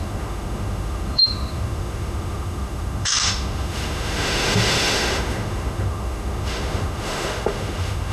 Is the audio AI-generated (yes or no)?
yes